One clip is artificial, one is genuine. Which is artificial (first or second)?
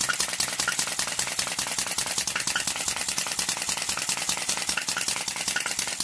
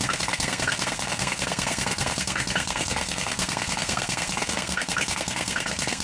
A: second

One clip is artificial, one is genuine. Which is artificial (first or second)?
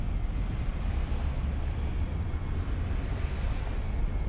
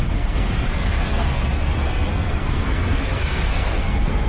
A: second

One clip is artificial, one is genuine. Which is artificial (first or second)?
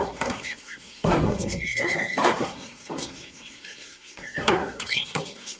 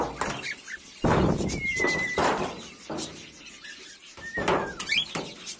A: first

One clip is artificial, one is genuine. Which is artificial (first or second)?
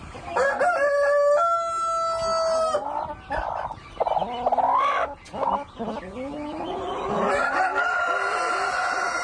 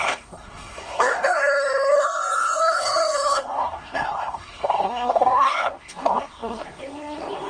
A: second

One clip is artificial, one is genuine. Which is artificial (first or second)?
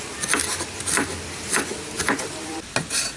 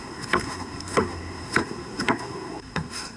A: second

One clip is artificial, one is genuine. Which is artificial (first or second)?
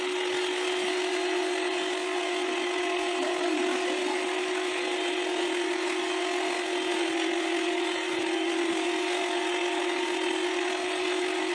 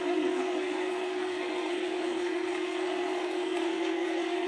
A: second